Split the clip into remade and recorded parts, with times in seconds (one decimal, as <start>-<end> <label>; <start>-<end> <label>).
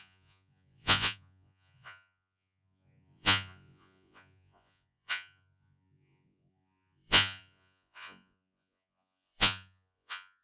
0.0-10.4 remade